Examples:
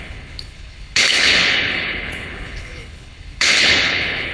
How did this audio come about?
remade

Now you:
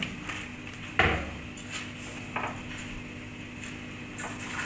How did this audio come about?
recorded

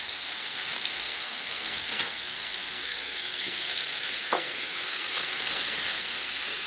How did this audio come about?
remade